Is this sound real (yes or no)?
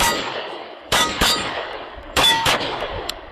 no